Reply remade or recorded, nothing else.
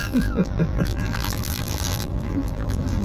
remade